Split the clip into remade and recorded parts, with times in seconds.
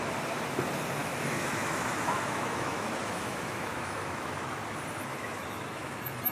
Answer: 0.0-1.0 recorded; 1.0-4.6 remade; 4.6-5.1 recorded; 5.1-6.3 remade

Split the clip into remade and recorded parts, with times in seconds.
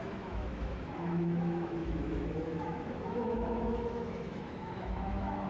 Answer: 0.0-5.5 remade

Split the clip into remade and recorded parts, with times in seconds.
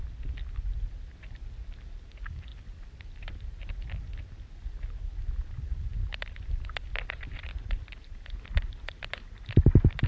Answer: 0.0-10.1 recorded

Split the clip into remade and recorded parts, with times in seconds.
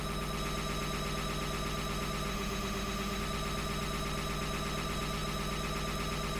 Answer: 0.0-2.3 recorded; 2.3-3.2 remade; 3.2-6.4 recorded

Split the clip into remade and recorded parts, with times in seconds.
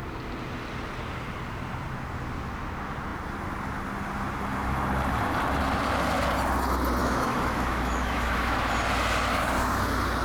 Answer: 0.0-7.0 recorded; 7.0-8.7 remade; 8.7-10.2 recorded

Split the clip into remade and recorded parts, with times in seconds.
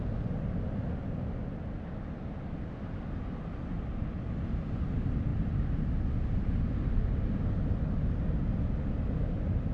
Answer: 0.0-9.7 recorded